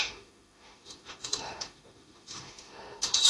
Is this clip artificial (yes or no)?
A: yes